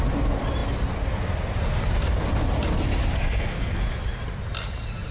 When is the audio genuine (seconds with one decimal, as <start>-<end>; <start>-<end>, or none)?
0.0-3.2; 3.8-5.1

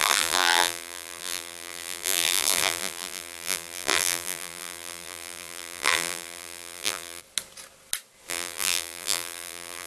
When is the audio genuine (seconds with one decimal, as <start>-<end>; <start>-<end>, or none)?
7.2-8.3

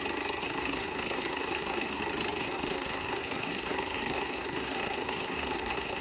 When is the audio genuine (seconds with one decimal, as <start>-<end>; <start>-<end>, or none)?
0.0-0.4; 2.0-2.4

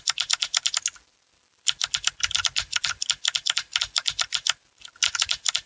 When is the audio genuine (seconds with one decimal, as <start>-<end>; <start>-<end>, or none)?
0.0-5.7

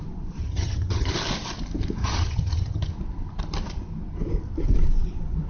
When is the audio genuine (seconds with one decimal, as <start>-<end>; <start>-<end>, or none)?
0.0-0.4; 1.1-2.0; 2.9-5.5